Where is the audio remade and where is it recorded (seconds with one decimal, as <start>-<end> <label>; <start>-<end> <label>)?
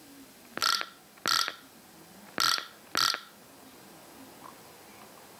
0.0-5.4 recorded